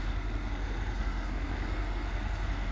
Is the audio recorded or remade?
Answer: remade